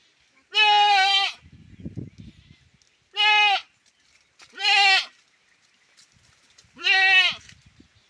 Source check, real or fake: real